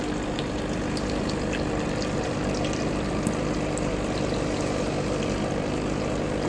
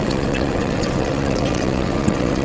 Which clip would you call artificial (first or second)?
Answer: second